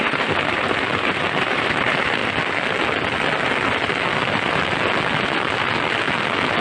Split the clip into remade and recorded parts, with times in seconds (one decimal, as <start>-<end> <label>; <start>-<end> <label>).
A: 0.0-2.2 remade; 2.2-6.6 recorded